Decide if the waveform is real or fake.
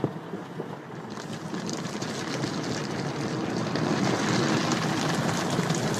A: real